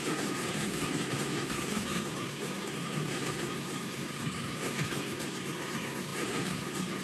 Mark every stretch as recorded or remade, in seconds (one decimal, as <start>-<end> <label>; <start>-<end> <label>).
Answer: 0.0-7.0 remade